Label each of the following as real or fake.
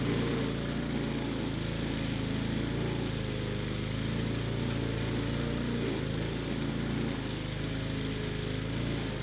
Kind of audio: real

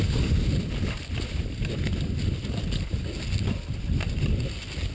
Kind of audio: real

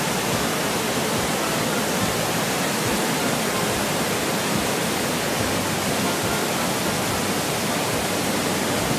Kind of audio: real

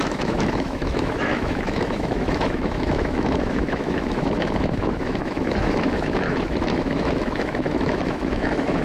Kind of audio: fake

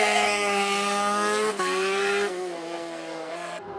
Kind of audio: fake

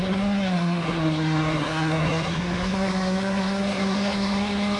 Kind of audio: fake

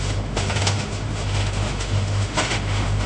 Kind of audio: fake